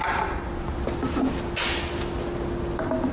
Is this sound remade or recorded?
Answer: recorded